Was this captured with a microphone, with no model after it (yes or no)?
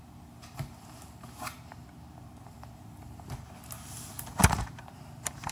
no